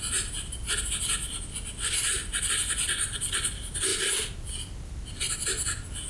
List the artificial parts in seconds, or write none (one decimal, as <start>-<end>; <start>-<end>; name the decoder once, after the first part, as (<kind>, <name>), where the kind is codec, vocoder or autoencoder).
none